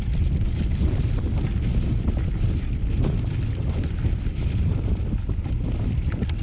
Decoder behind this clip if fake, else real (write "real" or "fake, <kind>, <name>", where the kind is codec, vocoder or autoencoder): real